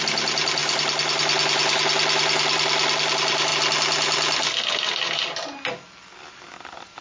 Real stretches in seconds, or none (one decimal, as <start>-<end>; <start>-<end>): 0.0-7.0